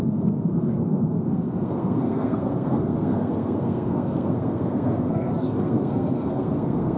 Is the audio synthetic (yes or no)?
yes